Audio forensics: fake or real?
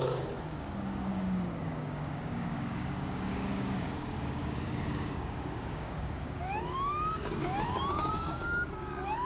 fake